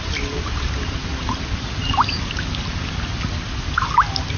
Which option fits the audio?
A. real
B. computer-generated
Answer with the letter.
A